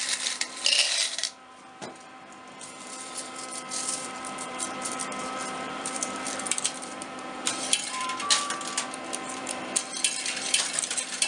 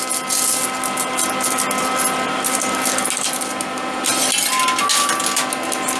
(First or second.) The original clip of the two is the second